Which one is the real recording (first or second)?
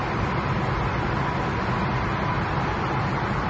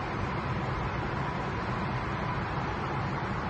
first